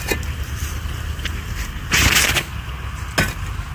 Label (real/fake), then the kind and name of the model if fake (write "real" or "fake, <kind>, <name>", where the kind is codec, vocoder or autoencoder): real